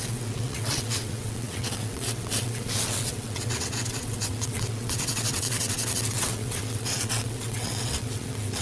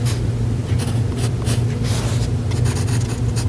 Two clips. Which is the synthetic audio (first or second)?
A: first